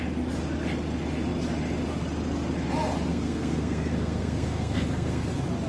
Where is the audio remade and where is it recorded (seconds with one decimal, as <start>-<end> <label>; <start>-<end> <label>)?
0.0-3.1 recorded; 3.1-5.2 remade; 5.2-5.7 recorded